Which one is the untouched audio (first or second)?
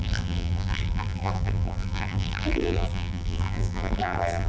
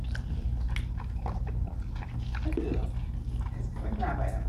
second